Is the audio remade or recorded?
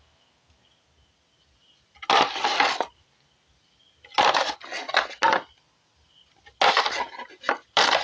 recorded